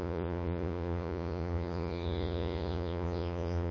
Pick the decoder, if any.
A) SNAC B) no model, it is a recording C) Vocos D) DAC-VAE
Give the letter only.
C